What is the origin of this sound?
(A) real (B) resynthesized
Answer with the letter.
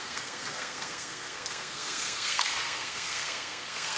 B